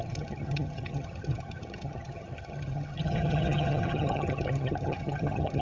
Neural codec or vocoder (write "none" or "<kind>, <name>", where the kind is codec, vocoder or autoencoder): vocoder, HiFi-GAN